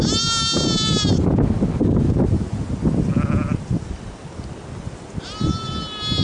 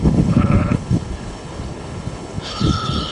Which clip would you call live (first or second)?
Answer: first